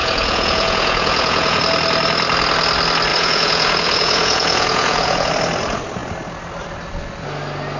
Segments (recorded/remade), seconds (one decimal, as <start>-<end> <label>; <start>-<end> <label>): 0.0-1.6 remade; 1.6-3.1 recorded; 3.1-5.3 remade; 5.3-7.8 recorded